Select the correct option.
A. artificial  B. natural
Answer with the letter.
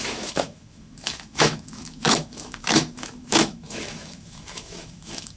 A